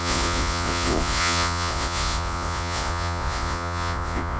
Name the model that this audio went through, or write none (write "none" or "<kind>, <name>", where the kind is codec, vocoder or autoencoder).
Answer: vocoder, Vocos